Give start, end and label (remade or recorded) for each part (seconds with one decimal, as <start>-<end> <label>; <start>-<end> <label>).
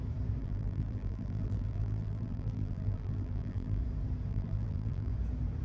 0.0-0.4 recorded; 0.4-3.8 remade; 3.8-4.3 recorded; 4.3-5.1 remade; 5.1-5.6 recorded